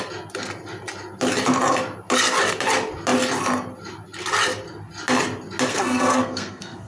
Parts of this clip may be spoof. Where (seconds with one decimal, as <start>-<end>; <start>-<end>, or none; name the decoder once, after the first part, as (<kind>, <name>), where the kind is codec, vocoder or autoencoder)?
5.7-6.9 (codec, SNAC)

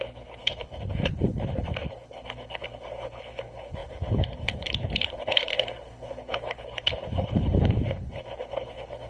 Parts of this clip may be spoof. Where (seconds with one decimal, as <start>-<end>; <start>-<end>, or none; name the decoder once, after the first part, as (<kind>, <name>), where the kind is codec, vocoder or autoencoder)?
0.0-9.1 (codec, HILCodec)

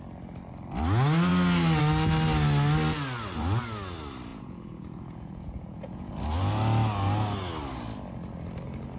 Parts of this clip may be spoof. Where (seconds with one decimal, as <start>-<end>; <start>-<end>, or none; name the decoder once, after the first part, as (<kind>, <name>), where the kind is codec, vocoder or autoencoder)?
4.3-6.1 (vocoder, Vocos)